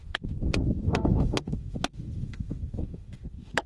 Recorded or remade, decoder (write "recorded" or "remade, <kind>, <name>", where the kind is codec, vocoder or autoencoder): remade, autoencoder, DAC-VAE